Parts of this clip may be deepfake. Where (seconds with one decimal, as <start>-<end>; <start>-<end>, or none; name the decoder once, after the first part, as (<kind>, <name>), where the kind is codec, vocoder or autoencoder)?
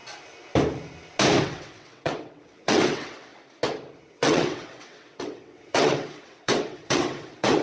1.4-3.3 (vocoder, WaveNeXt); 4.1-7.6